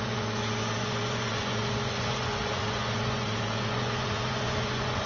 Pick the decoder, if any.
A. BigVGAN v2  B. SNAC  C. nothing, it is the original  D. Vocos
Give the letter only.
D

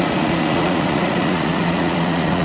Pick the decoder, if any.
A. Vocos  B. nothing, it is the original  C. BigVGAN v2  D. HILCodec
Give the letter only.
A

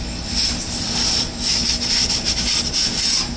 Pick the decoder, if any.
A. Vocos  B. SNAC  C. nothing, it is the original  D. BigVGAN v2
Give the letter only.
C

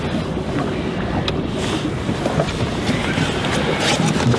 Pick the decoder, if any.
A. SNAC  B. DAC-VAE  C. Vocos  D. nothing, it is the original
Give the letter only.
D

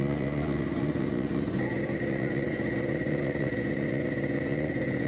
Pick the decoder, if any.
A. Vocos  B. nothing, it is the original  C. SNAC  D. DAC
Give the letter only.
A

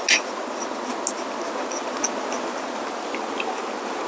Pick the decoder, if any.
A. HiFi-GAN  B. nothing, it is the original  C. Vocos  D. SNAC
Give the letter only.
B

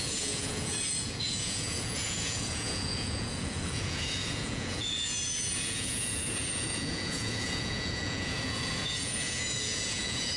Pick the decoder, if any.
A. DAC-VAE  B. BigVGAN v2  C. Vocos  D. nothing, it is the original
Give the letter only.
C